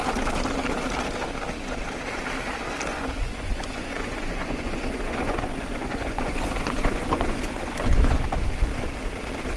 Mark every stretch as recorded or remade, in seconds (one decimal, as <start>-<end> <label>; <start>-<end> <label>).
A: 0.0-2.9 recorded; 2.9-8.2 remade; 8.2-9.6 recorded